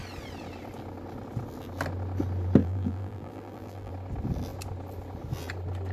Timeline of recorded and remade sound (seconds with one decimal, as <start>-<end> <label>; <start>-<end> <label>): 0.0-2.6 recorded; 2.6-3.9 remade; 3.9-5.9 recorded